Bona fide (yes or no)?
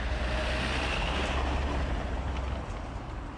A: yes